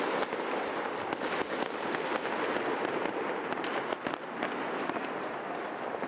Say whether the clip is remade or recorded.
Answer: recorded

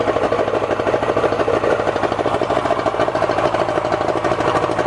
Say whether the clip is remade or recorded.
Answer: recorded